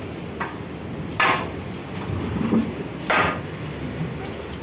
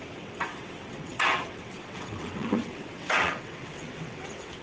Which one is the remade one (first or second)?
second